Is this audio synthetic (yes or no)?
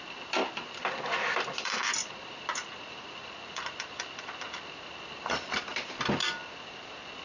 yes